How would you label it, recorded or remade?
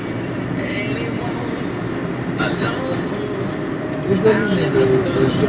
recorded